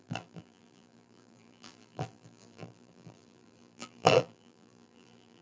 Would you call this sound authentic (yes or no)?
no